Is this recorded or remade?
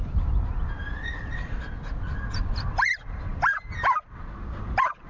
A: recorded